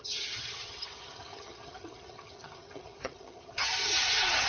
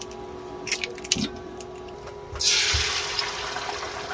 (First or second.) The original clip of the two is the second